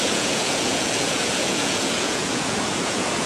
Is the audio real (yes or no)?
no